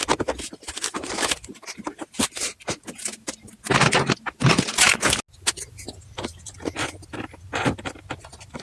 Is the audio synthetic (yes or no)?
no